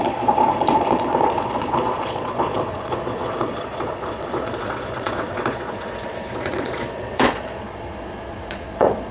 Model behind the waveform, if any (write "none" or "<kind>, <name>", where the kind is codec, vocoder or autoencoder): vocoder, Vocos